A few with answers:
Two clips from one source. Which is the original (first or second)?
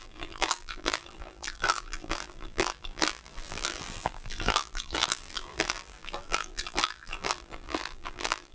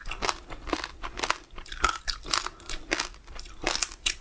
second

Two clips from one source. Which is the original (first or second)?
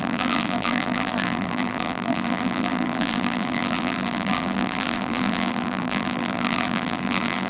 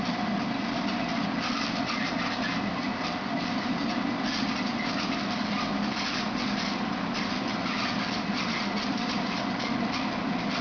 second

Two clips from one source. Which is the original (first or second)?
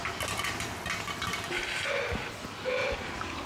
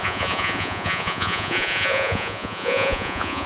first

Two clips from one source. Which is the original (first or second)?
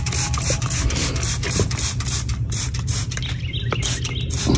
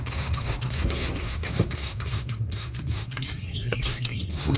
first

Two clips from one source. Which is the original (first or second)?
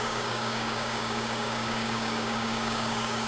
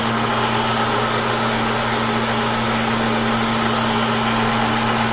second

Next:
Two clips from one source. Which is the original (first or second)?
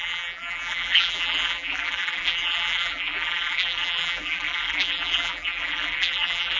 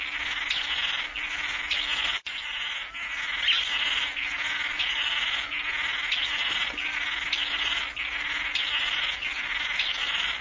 second